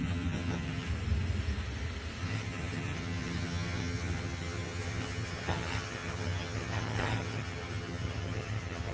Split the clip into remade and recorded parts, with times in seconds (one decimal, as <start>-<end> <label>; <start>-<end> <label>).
0.0-0.9 remade; 0.9-2.2 recorded; 2.2-8.9 remade